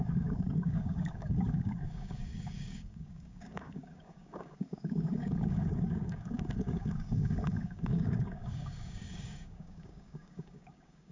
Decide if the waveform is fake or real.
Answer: fake